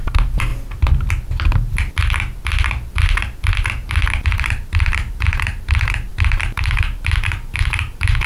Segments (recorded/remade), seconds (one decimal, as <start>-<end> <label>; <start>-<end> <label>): 0.0-0.5 remade; 0.5-3.9 recorded; 3.9-8.3 remade

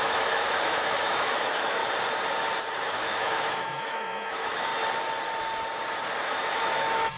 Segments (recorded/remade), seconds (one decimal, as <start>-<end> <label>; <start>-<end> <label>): 0.0-1.8 remade; 1.8-2.7 recorded; 2.7-4.7 remade; 4.7-6.2 recorded; 6.2-7.2 remade